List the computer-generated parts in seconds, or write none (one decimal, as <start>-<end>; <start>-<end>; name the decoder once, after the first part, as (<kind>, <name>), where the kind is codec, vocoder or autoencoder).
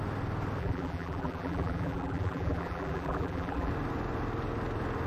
0.6-3.7 (vocoder, BigVGAN v2)